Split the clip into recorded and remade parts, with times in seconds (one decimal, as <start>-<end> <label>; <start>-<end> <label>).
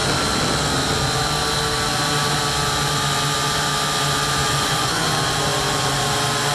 0.0-4.4 recorded; 4.4-5.0 remade; 5.0-6.5 recorded